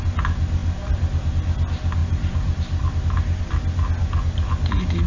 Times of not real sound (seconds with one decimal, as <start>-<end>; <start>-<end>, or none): 2.0-3.0